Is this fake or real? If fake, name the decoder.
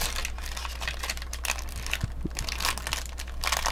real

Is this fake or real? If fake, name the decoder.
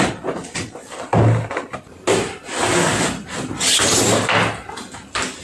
real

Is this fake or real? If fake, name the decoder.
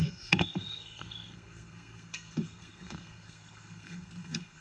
fake, codec, SNAC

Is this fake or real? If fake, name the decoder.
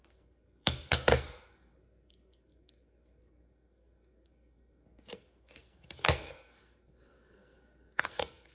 fake, codec, SNAC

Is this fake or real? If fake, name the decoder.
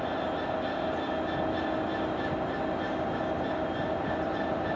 real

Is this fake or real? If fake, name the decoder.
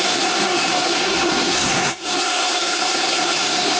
fake, codec, SNAC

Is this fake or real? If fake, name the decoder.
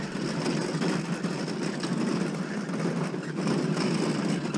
real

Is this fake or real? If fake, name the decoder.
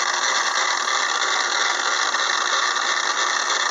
real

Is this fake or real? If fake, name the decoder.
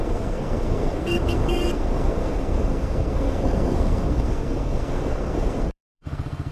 fake, codec, SNAC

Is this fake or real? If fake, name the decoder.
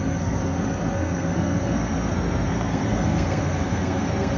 fake, codec, SNAC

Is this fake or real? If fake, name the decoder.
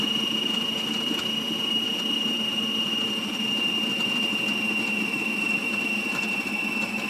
real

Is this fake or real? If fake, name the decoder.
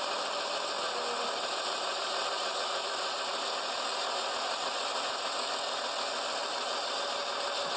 real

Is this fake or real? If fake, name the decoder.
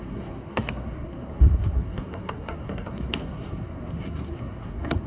fake, codec, SNAC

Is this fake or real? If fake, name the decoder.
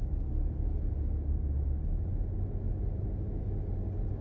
real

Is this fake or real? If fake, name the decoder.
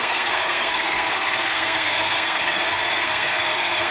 fake, codec, SNAC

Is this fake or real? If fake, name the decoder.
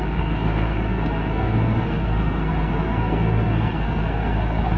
fake, codec, SNAC